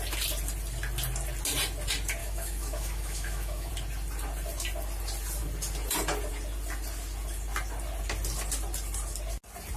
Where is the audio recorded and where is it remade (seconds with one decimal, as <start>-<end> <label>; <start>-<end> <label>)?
0.0-2.2 recorded; 2.2-3.7 remade; 3.7-9.8 recorded